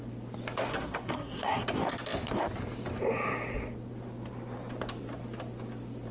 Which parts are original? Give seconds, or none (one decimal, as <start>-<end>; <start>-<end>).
0.0-0.7; 1.6-6.1